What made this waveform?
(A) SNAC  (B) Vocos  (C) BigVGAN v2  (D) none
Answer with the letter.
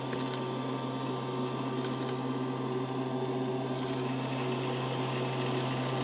D